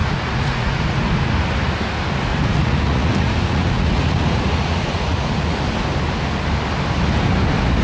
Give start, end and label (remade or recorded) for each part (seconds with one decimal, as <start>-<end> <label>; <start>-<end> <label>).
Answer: 0.0-1.2 remade; 1.2-2.3 recorded; 2.3-5.6 remade; 5.6-7.8 recorded